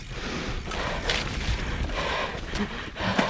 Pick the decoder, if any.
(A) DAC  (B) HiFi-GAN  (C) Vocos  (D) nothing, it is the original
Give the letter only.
D